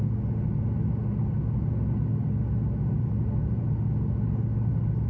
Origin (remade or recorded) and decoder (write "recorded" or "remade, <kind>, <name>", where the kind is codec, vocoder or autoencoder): recorded